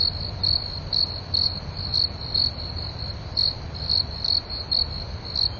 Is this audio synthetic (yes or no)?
no